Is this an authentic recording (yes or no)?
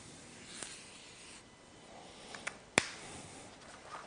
yes